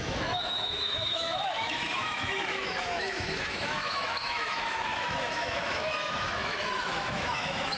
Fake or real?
fake